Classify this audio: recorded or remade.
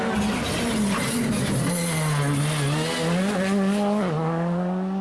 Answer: recorded